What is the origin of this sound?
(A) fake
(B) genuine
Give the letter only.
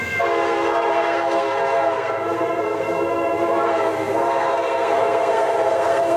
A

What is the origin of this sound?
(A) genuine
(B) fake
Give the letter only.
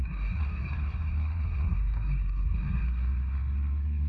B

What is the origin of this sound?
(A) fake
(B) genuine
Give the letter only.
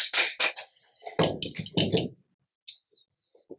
B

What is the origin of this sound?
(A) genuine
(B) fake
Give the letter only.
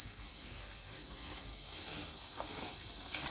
B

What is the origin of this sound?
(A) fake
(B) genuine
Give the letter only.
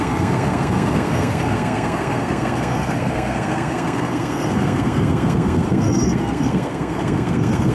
A